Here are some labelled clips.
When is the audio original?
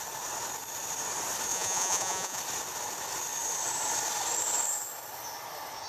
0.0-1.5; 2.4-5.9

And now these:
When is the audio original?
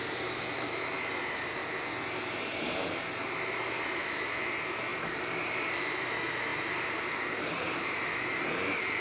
1.6-2.2; 4.9-5.4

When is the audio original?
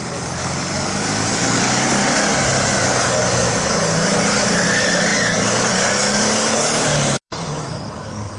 2.0-2.8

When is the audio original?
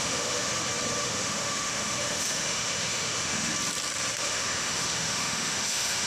0.5-1.0; 3.5-4.2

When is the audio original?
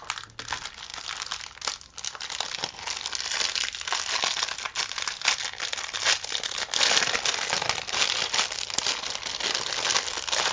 0.0-10.5